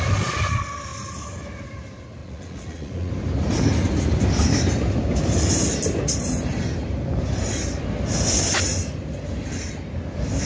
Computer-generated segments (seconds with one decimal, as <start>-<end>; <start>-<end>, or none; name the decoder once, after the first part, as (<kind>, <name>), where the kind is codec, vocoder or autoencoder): 2.2-3.1 (vocoder, Vocos)